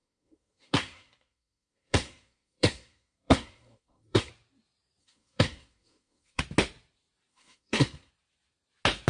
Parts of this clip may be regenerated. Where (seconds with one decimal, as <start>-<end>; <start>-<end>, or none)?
0.0-4.3; 5.0-6.4; 7.3-8.1